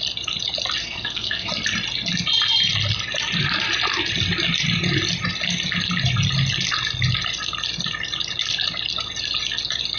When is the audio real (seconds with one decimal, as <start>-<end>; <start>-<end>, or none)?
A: 0.0-0.8; 1.5-10.0